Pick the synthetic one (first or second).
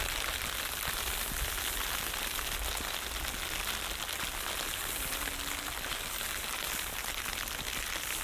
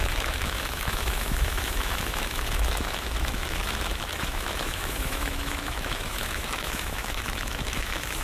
second